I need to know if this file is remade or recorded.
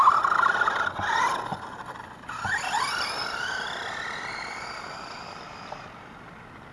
recorded